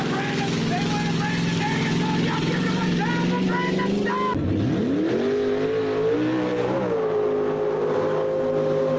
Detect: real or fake real